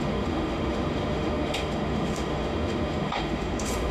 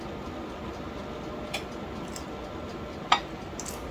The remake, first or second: first